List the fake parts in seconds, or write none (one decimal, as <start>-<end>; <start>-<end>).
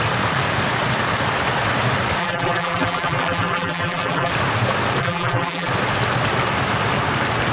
2.2-4.3; 5.0-5.7